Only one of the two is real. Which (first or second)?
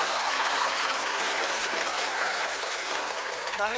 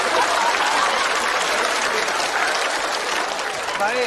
second